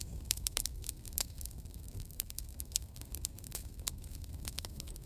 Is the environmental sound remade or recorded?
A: remade